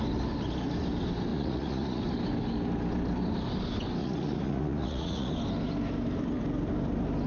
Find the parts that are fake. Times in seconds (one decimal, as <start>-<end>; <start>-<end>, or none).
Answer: 1.3-2.0; 4.0-5.3